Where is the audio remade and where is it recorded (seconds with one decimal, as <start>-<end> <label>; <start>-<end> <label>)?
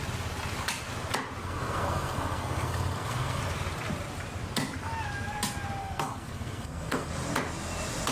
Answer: 0.0-1.4 recorded; 1.4-3.4 remade; 3.4-5.8 recorded; 5.8-7.1 remade; 7.1-8.1 recorded